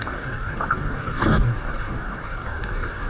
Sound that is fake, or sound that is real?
fake